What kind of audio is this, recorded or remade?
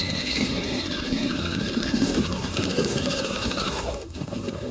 remade